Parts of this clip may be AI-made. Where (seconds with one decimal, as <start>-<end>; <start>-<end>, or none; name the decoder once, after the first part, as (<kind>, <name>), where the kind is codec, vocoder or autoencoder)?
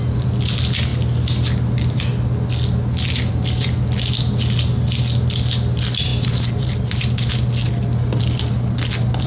none